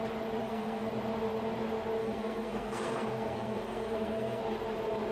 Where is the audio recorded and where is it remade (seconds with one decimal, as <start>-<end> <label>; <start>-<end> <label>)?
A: 0.0-0.4 recorded; 0.4-0.9 remade; 0.9-2.0 recorded; 2.0-4.4 remade; 4.4-5.1 recorded